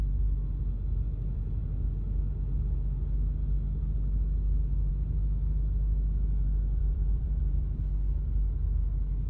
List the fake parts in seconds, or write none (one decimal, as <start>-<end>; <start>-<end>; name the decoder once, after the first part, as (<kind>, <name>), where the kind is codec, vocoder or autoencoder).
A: 6.8-7.8 (vocoder, BigVGAN v2)